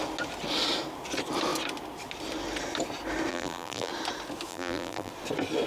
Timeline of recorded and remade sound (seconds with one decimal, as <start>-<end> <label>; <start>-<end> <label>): 0.0-3.3 recorded; 3.3-3.9 remade; 3.9-4.5 recorded; 4.5-5.1 remade; 5.1-5.7 recorded